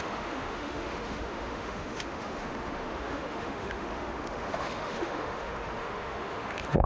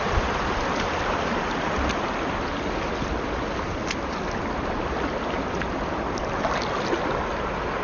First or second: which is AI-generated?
first